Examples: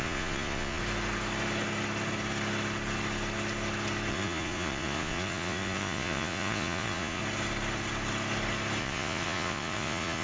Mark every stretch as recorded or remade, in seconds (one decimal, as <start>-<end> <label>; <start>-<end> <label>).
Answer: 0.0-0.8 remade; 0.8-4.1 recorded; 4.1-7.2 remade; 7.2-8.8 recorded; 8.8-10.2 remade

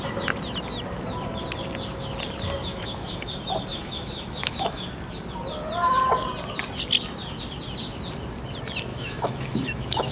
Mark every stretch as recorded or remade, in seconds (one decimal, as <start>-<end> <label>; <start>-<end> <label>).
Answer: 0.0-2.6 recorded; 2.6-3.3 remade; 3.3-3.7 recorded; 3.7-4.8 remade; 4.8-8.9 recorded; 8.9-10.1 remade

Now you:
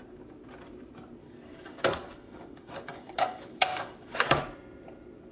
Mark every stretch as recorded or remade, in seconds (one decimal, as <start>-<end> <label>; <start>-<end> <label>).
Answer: 0.0-1.2 recorded; 1.2-4.4 remade; 4.4-5.3 recorded

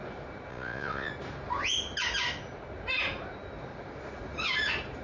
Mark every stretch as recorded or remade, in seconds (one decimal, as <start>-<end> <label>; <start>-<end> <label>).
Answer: 0.0-0.5 recorded; 0.5-1.1 remade; 1.1-5.0 recorded

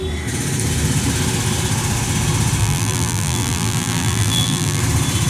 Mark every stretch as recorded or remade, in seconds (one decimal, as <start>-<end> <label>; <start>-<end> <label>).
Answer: 0.0-2.6 recorded; 2.6-4.8 remade; 4.8-5.3 recorded